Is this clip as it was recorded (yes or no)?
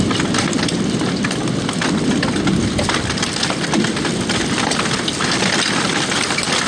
yes